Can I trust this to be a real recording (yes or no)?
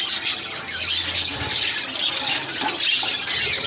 yes